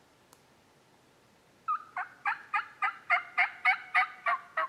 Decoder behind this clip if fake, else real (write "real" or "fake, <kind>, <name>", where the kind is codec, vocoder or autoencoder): fake, vocoder, BigVGAN v2